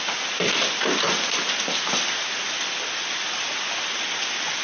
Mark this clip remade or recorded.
recorded